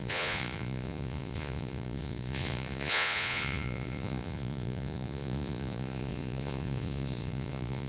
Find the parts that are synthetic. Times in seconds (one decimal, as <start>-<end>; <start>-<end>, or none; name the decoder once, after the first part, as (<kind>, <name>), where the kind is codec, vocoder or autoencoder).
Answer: 0.0-7.9 (vocoder, Vocos)